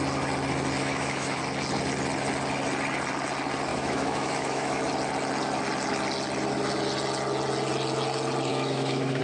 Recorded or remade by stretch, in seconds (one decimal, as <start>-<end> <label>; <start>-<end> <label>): 0.0-0.8 recorded; 0.8-1.4 remade; 1.4-3.7 recorded; 3.7-4.8 remade; 4.8-8.5 recorded; 8.5-9.2 remade